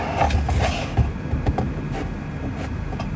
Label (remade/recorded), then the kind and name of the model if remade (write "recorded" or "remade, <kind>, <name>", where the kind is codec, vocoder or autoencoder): recorded